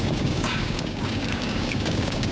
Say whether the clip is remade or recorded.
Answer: remade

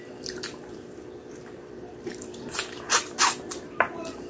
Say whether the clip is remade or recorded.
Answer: remade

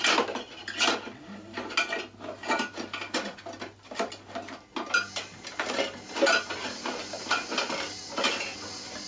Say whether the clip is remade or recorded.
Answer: recorded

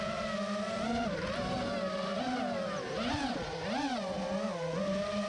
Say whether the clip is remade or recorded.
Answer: recorded